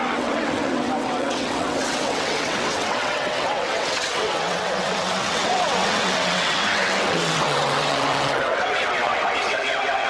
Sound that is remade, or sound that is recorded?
remade